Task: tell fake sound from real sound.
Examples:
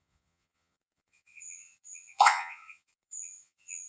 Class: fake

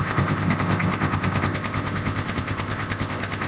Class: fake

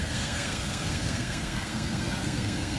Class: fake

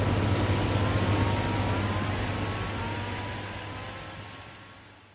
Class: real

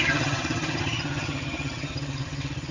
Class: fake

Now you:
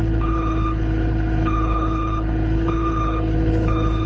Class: fake